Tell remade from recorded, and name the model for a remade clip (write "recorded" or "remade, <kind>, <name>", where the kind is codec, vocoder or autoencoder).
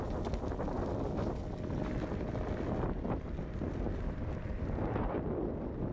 recorded